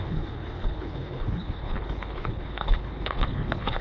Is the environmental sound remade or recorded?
remade